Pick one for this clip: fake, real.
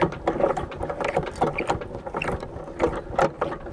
real